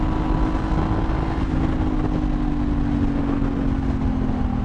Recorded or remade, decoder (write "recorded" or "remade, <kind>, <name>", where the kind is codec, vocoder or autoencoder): recorded